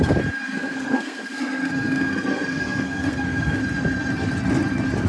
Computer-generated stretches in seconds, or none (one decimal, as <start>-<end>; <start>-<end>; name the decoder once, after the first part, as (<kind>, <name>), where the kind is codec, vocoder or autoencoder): 0.5-3.6 (codec, SNAC)